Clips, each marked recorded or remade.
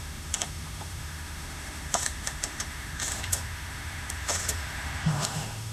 remade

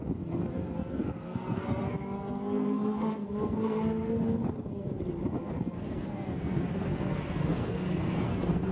remade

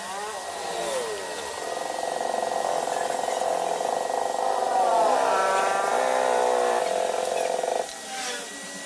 recorded